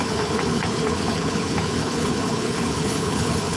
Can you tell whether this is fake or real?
fake